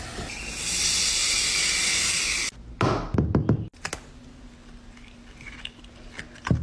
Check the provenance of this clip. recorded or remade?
recorded